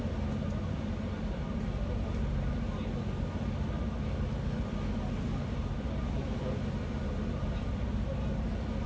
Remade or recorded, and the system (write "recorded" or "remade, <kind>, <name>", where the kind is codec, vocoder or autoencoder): recorded